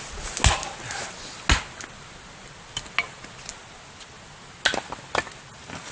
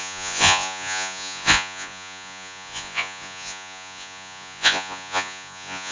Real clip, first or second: first